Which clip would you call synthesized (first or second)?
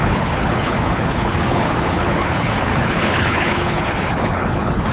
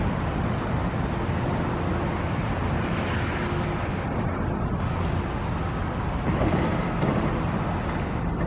first